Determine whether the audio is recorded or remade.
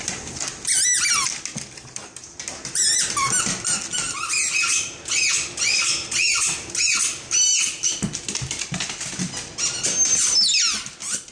recorded